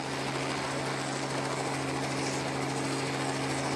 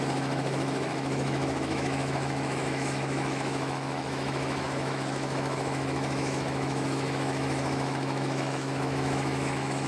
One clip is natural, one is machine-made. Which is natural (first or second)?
first